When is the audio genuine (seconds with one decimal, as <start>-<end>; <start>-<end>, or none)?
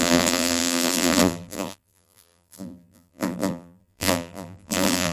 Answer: none